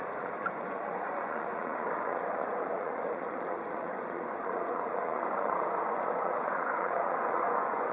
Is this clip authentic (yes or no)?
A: no